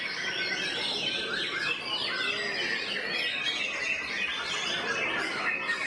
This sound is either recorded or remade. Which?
recorded